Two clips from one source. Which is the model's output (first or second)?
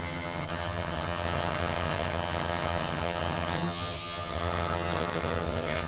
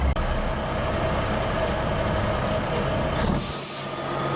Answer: first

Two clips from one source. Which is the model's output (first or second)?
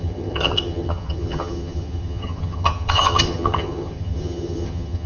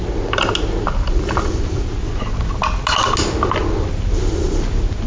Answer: first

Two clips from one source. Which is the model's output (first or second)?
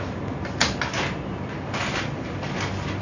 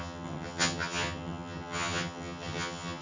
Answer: second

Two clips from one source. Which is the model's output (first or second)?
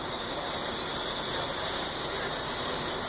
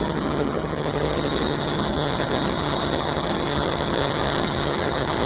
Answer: second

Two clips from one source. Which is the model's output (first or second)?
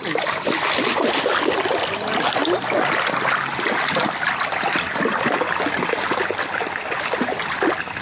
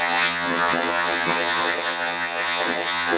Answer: second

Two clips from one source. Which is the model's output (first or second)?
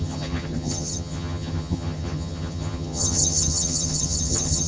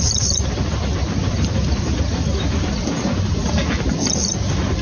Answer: first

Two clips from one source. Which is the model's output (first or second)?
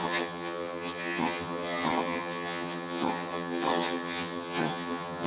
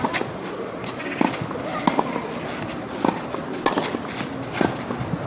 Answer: first